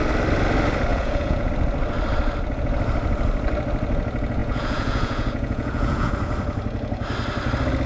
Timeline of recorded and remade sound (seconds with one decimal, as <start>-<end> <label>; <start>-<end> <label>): 0.0-0.9 recorded; 0.9-1.5 remade; 1.5-4.4 recorded; 4.4-6.1 remade; 6.1-7.9 recorded